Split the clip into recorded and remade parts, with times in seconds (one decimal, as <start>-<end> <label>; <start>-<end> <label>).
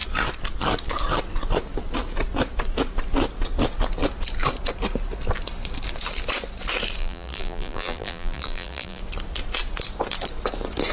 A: 0.0-7.0 recorded; 7.0-9.0 remade; 9.0-10.9 recorded